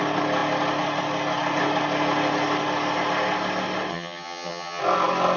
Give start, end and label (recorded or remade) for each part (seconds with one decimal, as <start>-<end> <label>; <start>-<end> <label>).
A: 0.0-3.9 recorded; 3.9-4.8 remade; 4.8-5.4 recorded